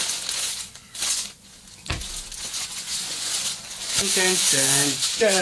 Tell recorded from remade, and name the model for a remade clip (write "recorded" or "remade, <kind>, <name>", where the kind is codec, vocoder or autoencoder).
remade, vocoder, Vocos